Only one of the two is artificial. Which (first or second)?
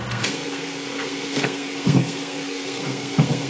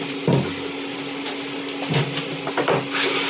first